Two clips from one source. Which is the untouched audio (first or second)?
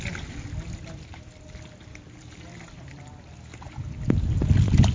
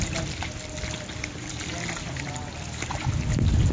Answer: first